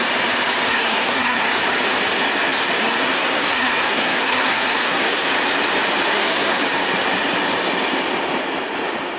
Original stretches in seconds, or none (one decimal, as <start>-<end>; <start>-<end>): 0.0-0.7; 1.5-2.8; 5.3-6.1; 6.6-9.2

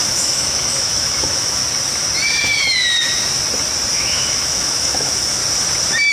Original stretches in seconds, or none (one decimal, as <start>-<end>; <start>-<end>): 1.6-3.9; 5.4-6.1

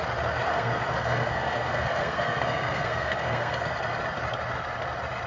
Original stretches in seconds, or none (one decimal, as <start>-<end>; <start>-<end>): 0.0-0.5; 3.7-5.3

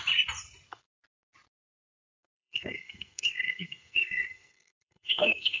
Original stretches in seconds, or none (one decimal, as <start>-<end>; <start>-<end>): 0.0-1.8

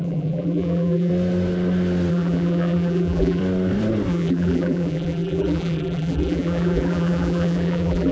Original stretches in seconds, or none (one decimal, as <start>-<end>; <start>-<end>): 1.1-2.1; 3.4-4.1

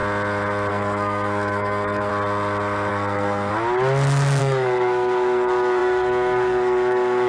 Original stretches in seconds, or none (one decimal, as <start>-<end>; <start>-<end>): 0.0-0.7; 2.1-2.9; 3.5-4.4